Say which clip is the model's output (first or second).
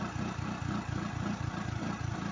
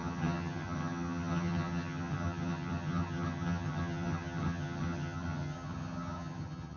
second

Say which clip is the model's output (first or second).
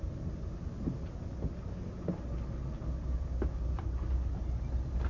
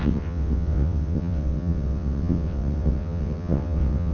second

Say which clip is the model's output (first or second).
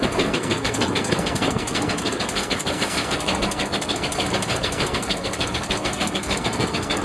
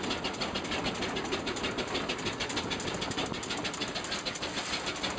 first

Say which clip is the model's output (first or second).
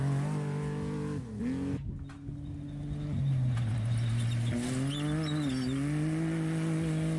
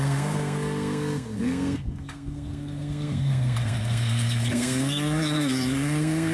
second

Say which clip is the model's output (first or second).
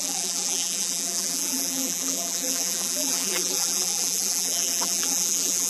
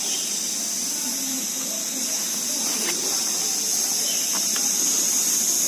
first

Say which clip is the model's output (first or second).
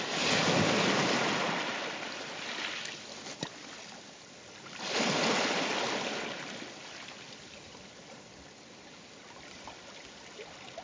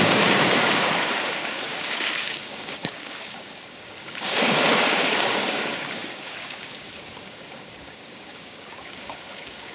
second